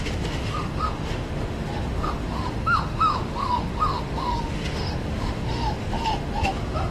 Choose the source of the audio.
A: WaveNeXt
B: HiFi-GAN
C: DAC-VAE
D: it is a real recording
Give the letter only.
C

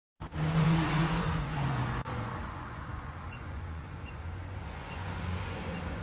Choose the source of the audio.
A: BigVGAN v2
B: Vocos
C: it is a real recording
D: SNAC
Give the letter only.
B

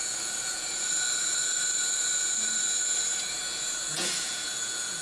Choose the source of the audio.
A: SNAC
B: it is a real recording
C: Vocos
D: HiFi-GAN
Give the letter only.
C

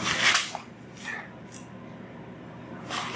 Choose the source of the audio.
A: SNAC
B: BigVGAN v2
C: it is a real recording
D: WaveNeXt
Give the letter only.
C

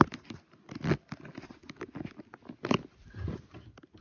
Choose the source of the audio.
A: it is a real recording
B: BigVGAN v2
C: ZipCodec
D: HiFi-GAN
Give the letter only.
A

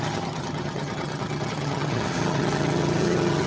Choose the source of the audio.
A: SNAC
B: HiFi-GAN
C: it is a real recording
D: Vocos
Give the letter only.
B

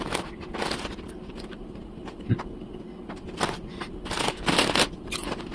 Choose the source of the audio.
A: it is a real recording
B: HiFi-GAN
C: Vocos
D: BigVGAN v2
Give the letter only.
A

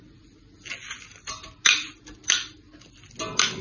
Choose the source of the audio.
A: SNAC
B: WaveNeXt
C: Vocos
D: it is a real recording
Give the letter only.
D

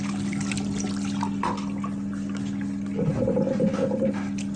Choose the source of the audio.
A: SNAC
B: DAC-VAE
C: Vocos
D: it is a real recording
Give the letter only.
D